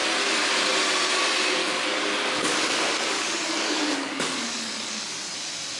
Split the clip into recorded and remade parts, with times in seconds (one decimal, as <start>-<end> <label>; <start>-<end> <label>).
0.0-1.6 recorded; 1.6-5.1 remade; 5.1-5.8 recorded